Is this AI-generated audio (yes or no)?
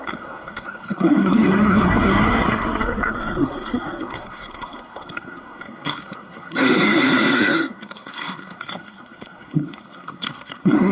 yes